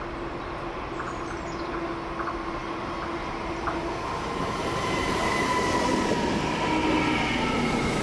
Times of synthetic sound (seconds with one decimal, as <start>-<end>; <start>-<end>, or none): none